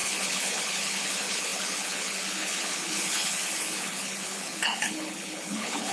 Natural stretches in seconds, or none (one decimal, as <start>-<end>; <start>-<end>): none